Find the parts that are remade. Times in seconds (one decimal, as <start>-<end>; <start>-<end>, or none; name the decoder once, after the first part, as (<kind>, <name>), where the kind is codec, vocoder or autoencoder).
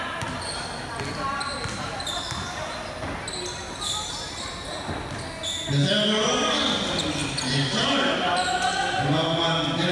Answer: none